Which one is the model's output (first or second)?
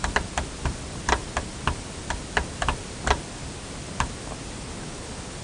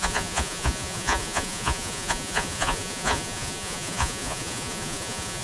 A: second